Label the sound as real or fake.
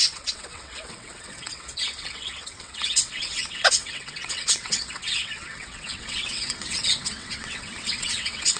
fake